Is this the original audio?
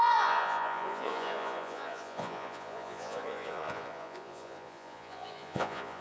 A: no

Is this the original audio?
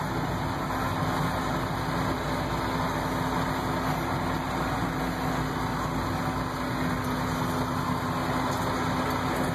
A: yes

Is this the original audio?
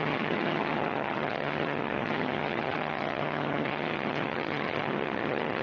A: no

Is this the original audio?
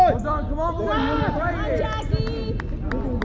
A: yes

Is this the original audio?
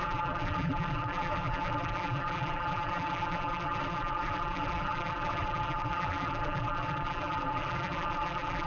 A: no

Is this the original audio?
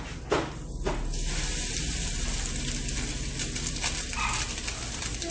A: yes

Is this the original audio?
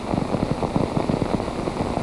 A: yes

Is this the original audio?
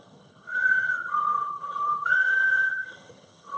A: no